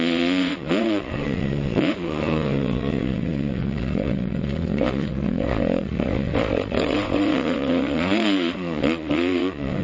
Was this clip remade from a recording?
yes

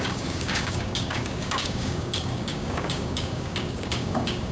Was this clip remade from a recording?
yes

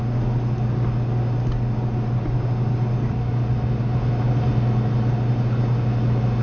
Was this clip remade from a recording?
no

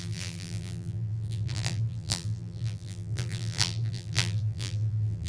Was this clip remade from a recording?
yes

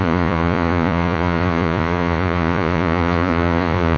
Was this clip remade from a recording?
yes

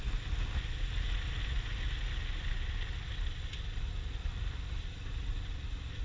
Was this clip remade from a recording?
no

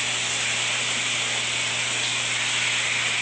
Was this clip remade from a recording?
no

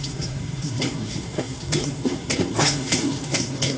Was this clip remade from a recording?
yes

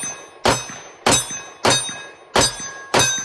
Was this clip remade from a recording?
no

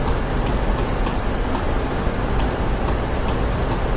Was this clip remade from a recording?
no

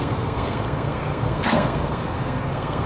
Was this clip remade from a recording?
yes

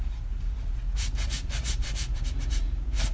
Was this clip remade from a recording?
yes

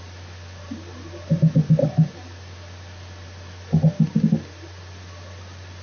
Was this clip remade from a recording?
no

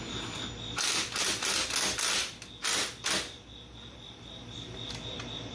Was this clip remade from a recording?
no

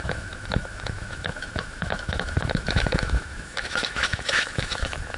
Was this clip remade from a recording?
yes